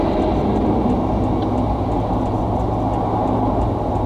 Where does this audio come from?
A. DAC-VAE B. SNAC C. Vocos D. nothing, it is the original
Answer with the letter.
D